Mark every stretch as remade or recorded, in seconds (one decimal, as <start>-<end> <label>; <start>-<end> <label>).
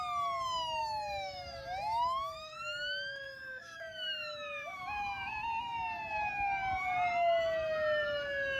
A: 0.0-0.8 recorded; 0.8-5.3 remade; 5.3-8.6 recorded